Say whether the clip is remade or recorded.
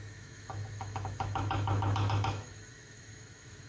remade